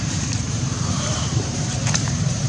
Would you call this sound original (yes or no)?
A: no